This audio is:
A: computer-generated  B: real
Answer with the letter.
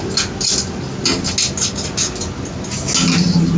B